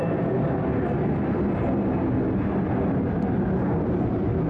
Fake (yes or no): no